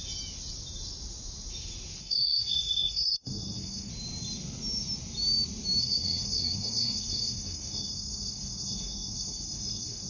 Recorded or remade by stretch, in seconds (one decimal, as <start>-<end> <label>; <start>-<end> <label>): 0.0-2.0 recorded; 2.0-3.9 remade; 3.9-5.8 recorded; 5.8-10.1 remade